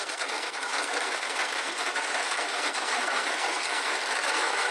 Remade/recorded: remade